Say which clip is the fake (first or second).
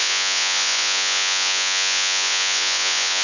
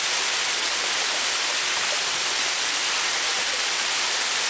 first